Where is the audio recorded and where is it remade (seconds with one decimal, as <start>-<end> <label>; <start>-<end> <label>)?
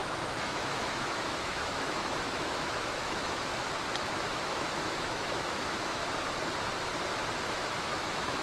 0.0-3.5 remade; 3.5-4.1 recorded; 4.1-6.0 remade; 6.0-7.4 recorded; 7.4-8.4 remade